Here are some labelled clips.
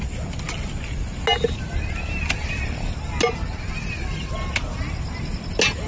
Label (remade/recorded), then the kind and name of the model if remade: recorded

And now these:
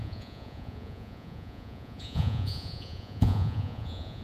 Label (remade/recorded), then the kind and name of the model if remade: remade, vocoder, Vocos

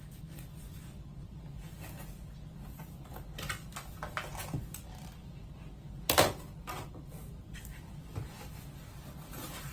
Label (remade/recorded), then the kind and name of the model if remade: recorded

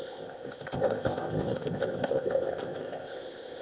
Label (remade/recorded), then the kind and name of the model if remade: remade, codec, ZipCodec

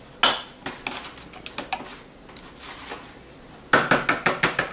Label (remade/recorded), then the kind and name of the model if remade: recorded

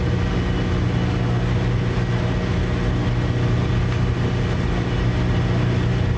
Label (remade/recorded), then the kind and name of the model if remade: recorded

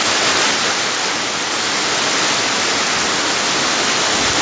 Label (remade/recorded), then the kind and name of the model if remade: recorded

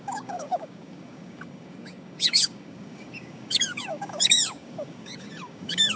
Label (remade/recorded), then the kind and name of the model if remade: remade, codec, DAC